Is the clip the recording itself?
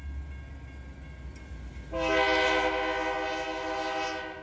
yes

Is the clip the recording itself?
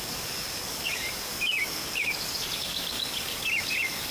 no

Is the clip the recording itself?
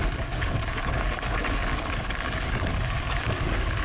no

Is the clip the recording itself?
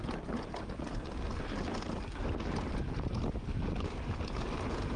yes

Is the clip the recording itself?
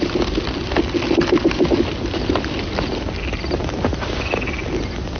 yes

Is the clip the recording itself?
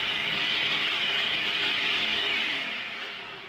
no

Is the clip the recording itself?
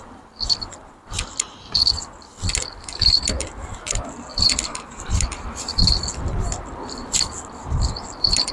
yes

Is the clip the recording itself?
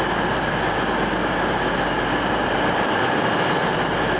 yes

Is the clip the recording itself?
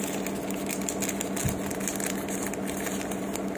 yes